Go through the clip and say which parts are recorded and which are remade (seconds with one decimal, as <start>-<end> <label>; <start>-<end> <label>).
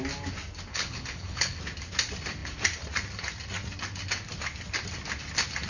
0.0-0.7 recorded; 0.7-1.6 remade; 1.6-5.7 recorded